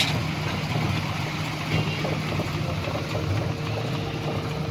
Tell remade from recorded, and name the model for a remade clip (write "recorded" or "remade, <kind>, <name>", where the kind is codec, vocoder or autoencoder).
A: recorded